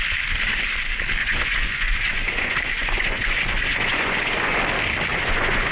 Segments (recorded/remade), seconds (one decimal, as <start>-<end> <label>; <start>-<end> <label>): 0.0-1.2 recorded; 1.2-4.6 remade; 4.6-5.1 recorded; 5.1-5.7 remade